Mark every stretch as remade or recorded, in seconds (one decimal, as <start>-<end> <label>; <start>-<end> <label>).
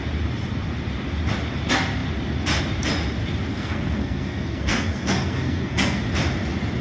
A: 0.0-3.5 recorded; 3.5-6.0 remade; 6.0-6.8 recorded